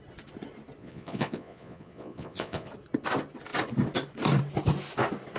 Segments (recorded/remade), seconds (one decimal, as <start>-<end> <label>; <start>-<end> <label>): 0.0-0.8 recorded; 0.8-2.7 remade; 2.7-5.4 recorded